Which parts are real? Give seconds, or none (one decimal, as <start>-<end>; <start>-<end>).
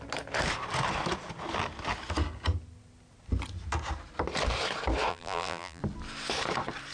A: 0.0-5.1; 5.8-6.9